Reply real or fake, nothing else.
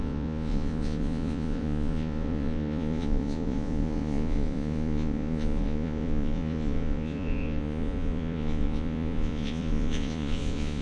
fake